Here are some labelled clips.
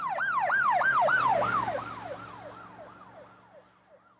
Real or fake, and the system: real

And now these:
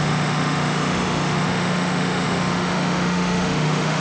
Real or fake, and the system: fake, autoencoder, DAC-VAE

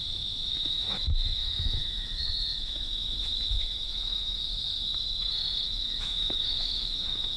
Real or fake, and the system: fake, autoencoder, DAC-VAE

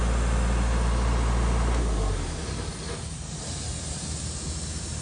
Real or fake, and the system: real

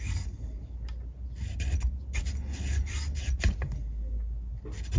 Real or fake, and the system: real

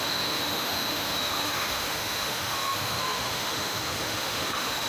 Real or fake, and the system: fake, autoencoder, DAC-VAE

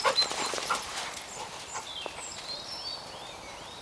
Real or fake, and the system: real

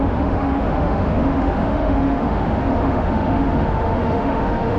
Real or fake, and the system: fake, autoencoder, DAC-VAE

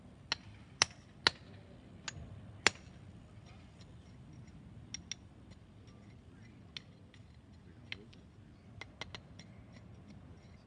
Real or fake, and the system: real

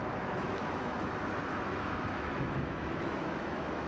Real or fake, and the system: fake, autoencoder, DAC-VAE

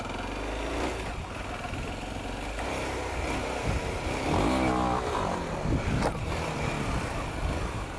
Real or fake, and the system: real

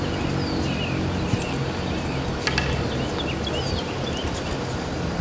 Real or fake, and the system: real